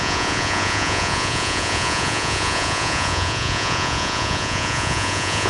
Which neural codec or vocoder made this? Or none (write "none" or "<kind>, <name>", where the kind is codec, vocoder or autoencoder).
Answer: vocoder, Vocos